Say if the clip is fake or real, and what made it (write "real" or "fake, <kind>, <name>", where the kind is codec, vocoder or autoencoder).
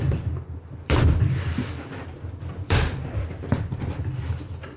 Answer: fake, vocoder, BigVGAN v2